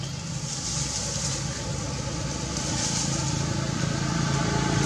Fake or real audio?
real